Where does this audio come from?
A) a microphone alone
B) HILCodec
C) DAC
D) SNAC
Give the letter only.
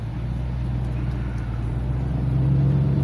A